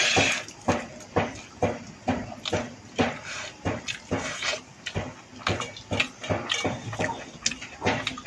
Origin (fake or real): real